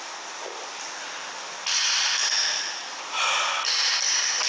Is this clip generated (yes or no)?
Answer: no